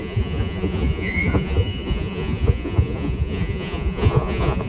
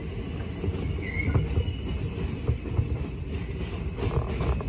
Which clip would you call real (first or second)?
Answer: second